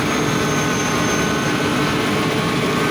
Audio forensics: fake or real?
real